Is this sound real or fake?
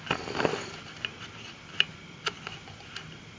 real